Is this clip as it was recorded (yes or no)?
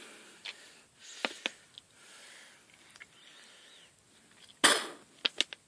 yes